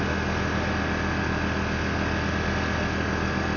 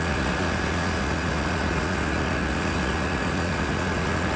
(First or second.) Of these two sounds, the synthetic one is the second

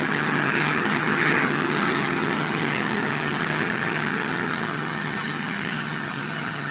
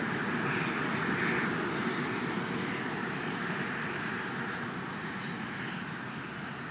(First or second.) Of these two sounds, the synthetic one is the first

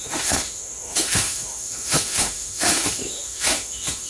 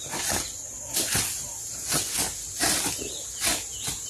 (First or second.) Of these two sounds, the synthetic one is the first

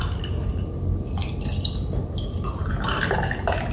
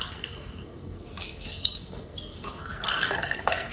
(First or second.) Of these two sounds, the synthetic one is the second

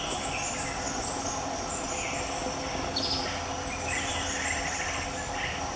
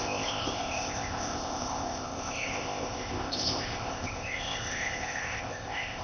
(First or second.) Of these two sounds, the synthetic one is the second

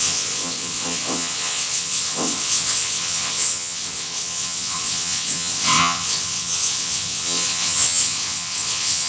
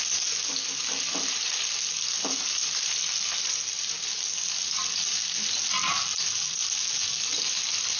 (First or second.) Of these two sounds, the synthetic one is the first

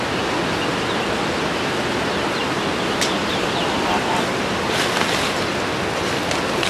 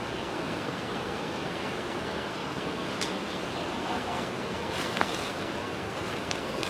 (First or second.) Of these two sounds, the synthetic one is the second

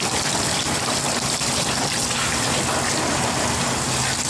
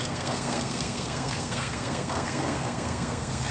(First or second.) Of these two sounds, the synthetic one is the second